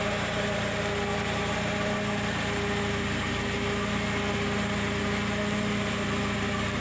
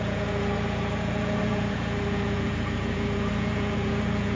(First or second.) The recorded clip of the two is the first